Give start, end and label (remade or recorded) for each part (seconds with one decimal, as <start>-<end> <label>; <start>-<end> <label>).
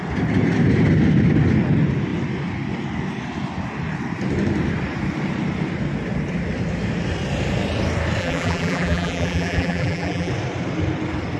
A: 0.0-8.2 recorded; 8.2-10.3 remade; 10.3-11.4 recorded